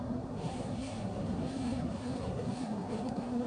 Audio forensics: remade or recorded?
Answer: remade